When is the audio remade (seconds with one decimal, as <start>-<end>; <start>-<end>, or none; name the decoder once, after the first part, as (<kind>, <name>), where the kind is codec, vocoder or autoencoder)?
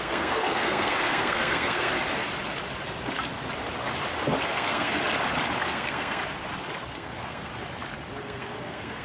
0.0-1.9 (codec, SNAC); 4.5-5.0; 5.6-6.2; 6.9-7.5; 8.2-9.0